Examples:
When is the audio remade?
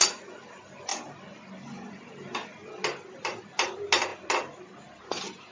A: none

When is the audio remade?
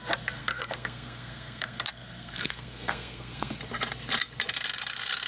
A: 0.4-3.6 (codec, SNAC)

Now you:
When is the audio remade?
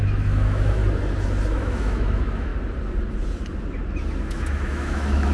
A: 0.0-0.8 (autoencoder, DAC-VAE); 1.5-2.5; 4.2-5.3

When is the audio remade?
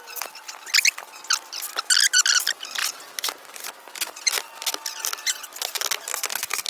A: 2.8-4.3 (vocoder, BigVGAN v2)